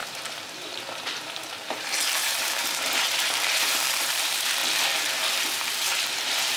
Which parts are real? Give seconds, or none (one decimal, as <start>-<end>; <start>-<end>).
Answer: 4.6-5.7